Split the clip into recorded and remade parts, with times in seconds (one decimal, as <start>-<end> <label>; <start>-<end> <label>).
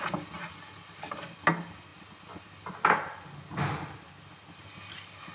0.0-5.3 recorded